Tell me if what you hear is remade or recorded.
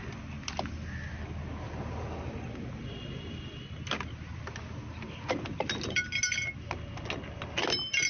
recorded